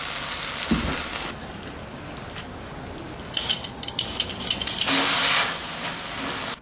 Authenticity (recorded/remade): recorded